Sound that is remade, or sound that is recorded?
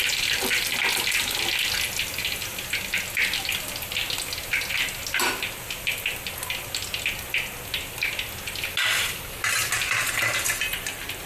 recorded